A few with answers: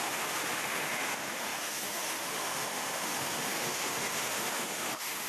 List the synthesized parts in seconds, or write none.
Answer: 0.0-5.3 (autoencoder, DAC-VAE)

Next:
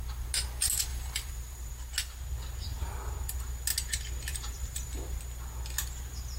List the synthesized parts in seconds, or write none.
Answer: 0.9-1.7 (vocoder, BigVGAN v2); 4.3-5.2